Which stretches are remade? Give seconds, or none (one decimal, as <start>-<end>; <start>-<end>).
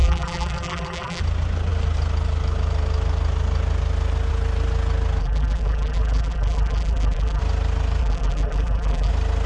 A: 0.0-1.2; 5.2-7.4; 8.0-9.1